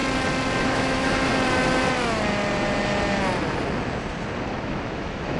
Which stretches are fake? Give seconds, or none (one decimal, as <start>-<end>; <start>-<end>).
0.6-1.3; 4.5-5.4